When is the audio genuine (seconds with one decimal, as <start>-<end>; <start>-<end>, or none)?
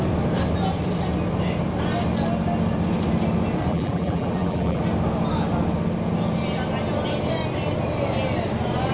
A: 0.0-3.7; 4.8-8.9